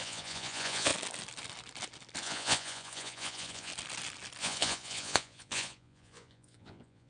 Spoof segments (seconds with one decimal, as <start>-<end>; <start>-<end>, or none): 0.0-0.9; 2.2-3.7; 4.4-7.1